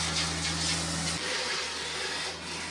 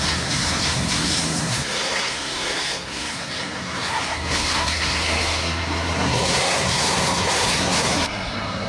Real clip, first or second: first